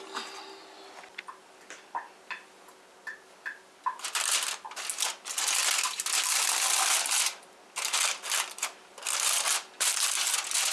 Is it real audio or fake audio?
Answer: real